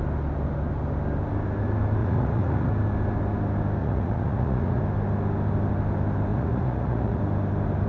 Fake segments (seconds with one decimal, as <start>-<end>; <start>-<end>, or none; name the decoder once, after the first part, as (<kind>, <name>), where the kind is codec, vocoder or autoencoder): 2.0-2.7 (vocoder, Vocos); 3.8-4.8; 6.3-7.2